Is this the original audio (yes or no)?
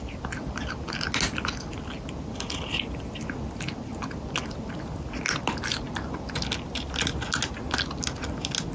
yes